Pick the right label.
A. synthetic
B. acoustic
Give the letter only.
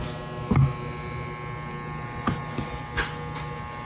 B